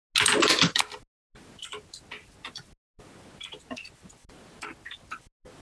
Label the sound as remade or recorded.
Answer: recorded